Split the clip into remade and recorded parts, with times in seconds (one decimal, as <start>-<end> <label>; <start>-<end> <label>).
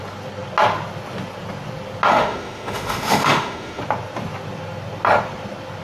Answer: 0.0-2.1 recorded; 2.1-3.8 remade; 3.8-5.8 recorded